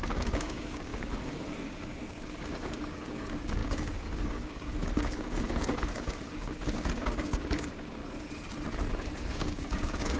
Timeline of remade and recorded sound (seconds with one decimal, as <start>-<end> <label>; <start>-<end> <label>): 0.0-8.0 remade; 8.0-9.3 recorded; 9.3-10.2 remade